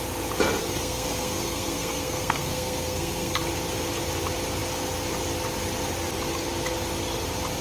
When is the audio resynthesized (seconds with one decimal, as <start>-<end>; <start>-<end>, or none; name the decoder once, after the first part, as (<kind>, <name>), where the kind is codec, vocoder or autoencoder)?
0.6-3.4 (codec, SNAC)